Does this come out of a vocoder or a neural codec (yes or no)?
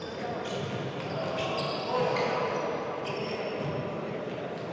no